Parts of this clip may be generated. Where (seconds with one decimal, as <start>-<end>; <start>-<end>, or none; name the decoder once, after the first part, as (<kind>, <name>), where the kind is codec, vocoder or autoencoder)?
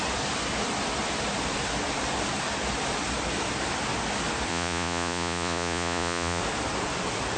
4.5-6.4 (vocoder, Vocos)